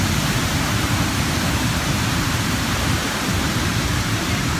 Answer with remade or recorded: remade